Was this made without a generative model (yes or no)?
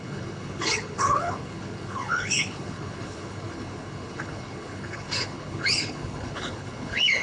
no